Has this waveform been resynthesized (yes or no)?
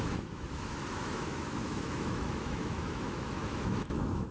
yes